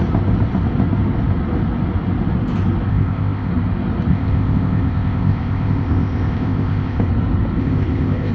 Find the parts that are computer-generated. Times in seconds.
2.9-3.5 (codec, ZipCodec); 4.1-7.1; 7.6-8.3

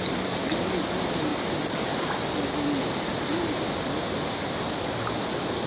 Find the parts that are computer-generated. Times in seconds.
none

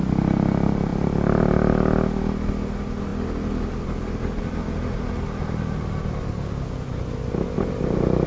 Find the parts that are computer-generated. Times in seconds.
none

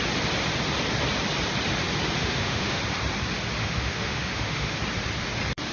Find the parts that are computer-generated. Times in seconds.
2.2-2.8 (autoencoder, DAC-VAE); 3.6-4.8

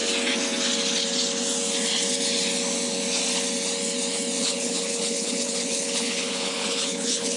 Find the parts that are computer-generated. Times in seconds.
4.4-7.4 (codec, HILCodec)